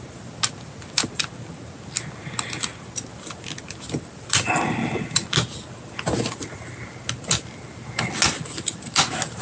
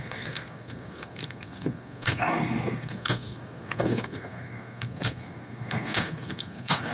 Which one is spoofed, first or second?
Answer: second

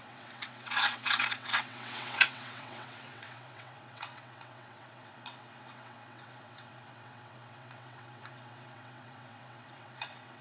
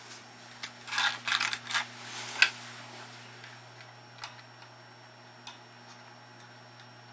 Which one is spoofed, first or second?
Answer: first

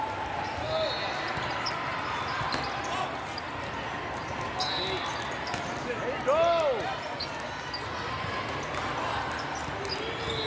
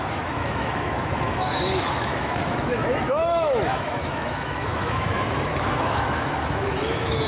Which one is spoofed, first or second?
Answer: second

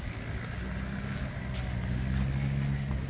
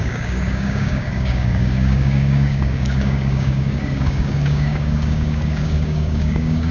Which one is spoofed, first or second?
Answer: second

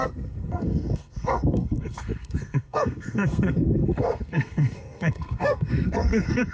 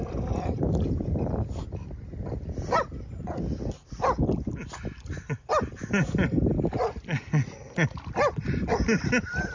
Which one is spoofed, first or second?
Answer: first